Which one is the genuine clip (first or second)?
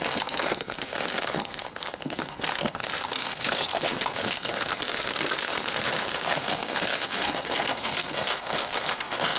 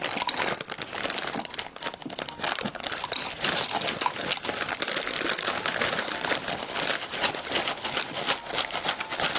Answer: second